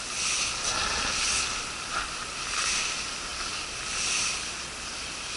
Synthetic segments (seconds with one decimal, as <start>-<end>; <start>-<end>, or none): none